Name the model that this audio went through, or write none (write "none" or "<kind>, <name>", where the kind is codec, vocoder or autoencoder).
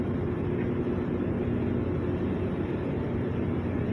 none